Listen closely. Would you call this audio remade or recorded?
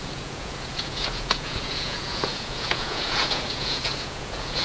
remade